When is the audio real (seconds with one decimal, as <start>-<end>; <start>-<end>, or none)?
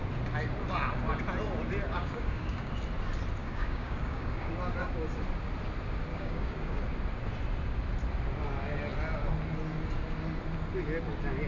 0.0-1.9; 2.7-3.4; 4.5-6.1; 6.8-11.5